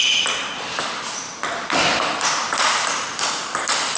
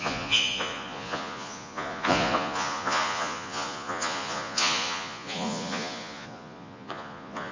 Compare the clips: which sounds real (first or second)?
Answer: first